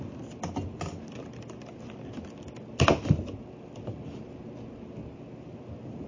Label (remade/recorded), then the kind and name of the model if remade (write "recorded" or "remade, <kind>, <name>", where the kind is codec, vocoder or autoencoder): recorded